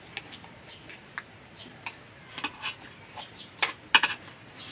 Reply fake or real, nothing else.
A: real